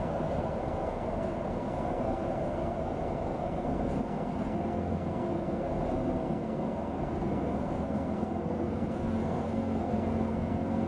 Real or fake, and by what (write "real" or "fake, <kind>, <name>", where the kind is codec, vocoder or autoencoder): fake, codec, SNAC